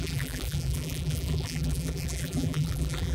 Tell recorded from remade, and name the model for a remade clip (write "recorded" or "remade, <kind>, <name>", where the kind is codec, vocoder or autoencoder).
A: remade, vocoder, BigVGAN v2